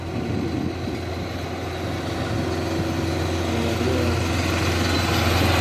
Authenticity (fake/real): real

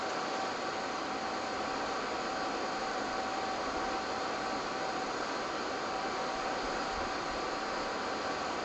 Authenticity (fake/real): real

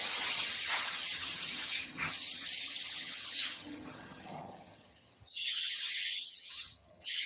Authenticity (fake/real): fake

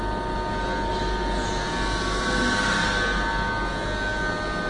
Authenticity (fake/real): real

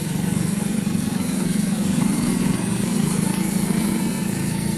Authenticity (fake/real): fake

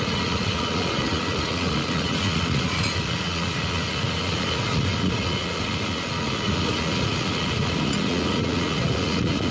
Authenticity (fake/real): fake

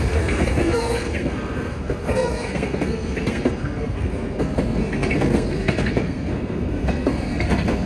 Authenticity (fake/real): fake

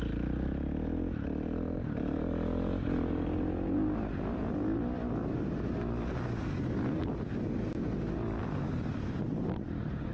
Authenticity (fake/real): real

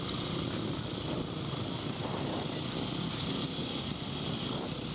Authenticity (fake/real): real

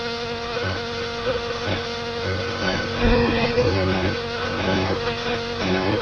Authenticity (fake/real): fake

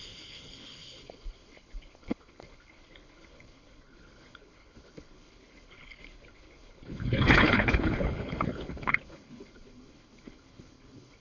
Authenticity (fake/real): fake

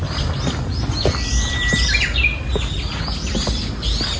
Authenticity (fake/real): real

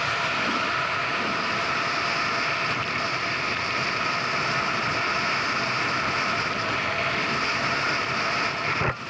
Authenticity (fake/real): real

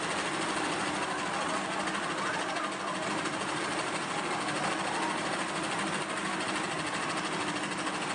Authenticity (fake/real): real